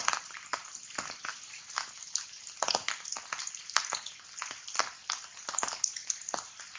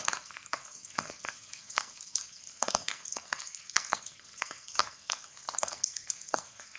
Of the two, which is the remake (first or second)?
second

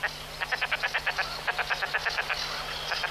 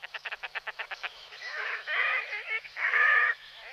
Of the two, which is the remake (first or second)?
second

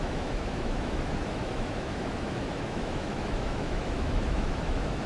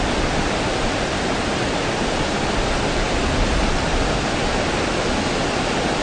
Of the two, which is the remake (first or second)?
first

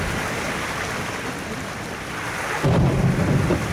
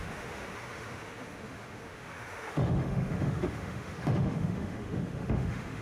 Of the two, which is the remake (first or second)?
second